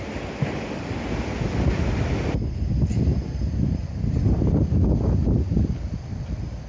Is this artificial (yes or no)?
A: no